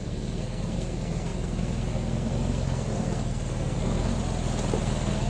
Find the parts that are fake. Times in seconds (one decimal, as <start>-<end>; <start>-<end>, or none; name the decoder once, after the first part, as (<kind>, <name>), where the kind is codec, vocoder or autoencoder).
0.0-4.1 (codec, SNAC); 4.8-5.3